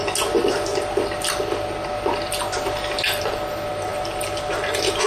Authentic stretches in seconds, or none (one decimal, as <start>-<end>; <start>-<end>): 0.0-5.1